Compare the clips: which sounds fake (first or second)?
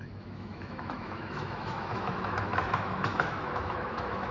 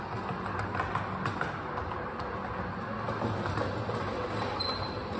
first